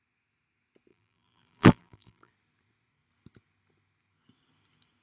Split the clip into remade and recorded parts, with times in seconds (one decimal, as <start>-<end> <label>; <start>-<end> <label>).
0.0-0.9 recorded; 0.9-2.3 remade; 2.3-5.0 recorded